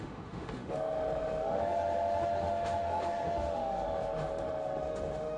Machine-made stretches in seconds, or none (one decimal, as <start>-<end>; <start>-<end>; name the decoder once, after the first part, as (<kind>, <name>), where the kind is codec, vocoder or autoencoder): 0.0-5.4 (autoencoder, DAC-VAE)